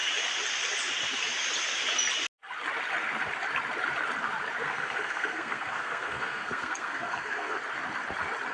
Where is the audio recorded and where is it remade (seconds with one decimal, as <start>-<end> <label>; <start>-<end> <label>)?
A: 0.0-4.6 recorded; 4.6-7.6 remade; 7.6-8.5 recorded